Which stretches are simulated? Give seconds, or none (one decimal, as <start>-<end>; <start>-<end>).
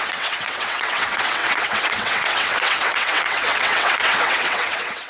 0.0-5.1